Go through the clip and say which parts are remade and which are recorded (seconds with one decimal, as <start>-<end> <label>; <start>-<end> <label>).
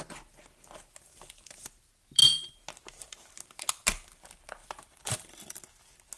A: 0.0-4.6 recorded; 4.6-5.6 remade; 5.6-6.2 recorded